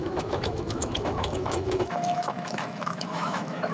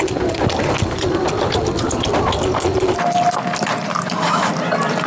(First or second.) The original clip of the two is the second